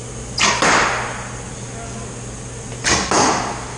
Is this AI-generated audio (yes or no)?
no